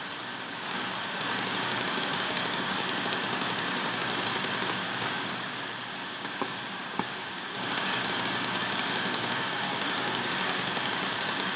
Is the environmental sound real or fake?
fake